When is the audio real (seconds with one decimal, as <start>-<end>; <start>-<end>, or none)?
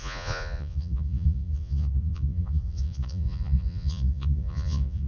none